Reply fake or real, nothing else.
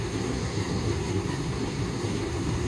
fake